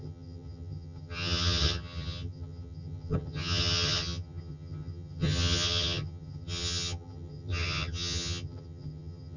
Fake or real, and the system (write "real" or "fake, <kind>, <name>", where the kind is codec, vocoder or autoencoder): fake, vocoder, HiFi-GAN